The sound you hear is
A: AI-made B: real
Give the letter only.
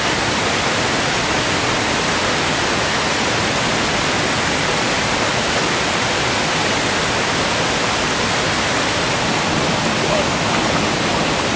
B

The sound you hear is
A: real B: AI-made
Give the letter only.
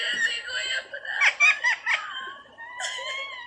A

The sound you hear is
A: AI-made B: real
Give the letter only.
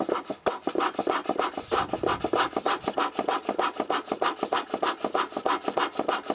B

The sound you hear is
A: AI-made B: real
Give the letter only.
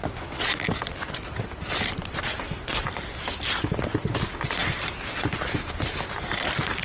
B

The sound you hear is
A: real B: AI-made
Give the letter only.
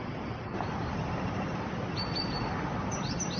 A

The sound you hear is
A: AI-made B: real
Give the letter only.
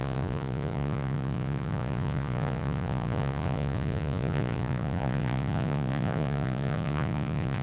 A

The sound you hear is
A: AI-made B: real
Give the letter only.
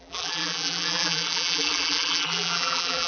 A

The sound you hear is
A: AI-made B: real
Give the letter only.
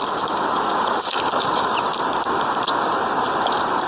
B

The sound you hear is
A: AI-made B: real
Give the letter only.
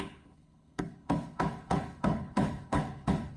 A